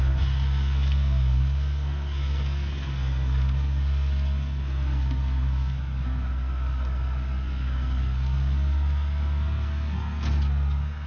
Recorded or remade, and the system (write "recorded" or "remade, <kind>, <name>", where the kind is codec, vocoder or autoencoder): remade, codec, SNAC